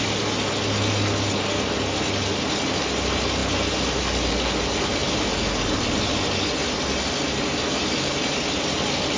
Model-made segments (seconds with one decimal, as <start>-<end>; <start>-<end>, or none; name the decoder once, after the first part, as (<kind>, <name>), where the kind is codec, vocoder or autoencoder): none